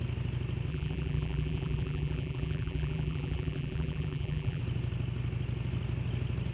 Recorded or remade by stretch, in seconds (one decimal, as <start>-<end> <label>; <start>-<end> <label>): 0.0-0.7 recorded; 0.7-4.6 remade; 4.6-6.5 recorded